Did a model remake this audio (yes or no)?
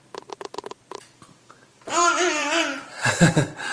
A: yes